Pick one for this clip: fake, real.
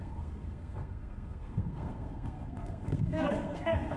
fake